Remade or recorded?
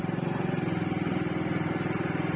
recorded